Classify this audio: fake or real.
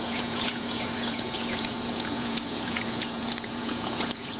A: fake